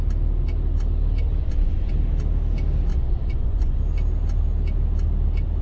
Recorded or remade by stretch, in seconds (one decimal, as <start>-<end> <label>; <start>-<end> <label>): 0.0-1.4 recorded; 1.4-1.9 remade; 1.9-2.9 recorded; 2.9-3.8 remade; 3.8-5.6 recorded